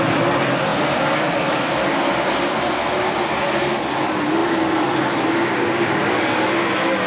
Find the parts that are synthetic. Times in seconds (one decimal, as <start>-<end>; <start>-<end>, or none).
none